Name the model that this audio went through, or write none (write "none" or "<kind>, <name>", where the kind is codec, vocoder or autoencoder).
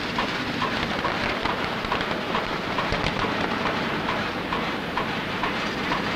vocoder, BigVGAN v2